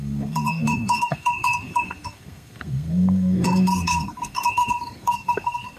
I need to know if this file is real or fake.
fake